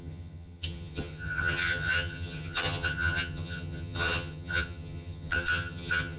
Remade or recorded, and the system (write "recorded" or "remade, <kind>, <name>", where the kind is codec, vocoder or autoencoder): remade, vocoder, HiFi-GAN